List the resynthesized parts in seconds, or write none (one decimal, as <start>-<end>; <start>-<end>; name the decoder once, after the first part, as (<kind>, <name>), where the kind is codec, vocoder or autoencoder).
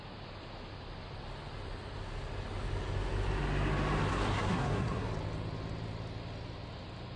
4.1-5.1 (codec, SNAC)